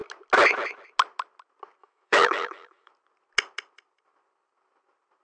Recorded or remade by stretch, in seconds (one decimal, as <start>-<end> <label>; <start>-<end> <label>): 0.0-1.8 recorded; 1.8-2.9 remade; 2.9-5.2 recorded